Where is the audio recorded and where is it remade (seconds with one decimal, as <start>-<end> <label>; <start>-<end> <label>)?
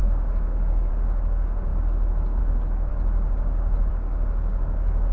0.0-2.9 remade; 2.9-3.9 recorded; 3.9-5.1 remade